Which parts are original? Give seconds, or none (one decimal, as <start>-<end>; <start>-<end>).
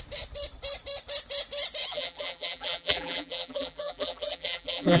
0.0-1.9